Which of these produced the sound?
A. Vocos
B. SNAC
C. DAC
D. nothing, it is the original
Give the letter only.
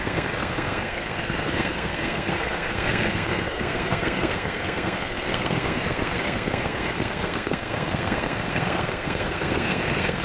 B